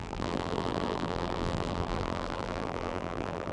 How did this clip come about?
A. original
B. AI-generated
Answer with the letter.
B